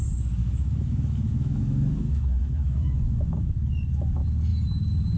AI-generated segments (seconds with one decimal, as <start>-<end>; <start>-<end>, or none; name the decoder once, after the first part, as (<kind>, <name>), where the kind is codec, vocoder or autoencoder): 0.4-3.5 (autoencoder, DAC-VAE)